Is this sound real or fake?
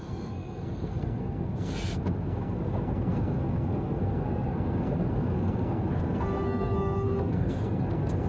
fake